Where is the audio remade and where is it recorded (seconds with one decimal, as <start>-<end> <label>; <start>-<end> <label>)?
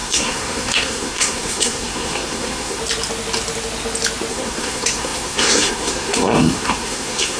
0.0-2.8 remade; 2.8-4.3 recorded; 4.3-7.4 remade